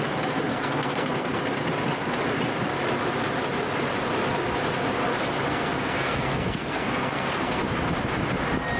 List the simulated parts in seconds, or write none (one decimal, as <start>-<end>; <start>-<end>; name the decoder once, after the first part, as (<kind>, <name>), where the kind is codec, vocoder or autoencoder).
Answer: 0.5-1.4 (codec, SNAC); 5.5-7.6